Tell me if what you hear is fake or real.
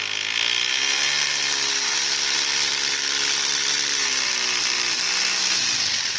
real